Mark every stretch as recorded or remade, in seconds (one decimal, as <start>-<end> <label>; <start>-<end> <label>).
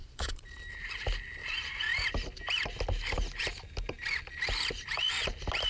0.0-0.6 remade; 0.6-5.7 recorded